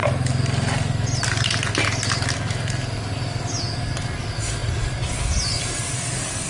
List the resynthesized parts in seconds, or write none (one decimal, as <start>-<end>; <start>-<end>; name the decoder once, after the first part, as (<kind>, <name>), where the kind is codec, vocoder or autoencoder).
none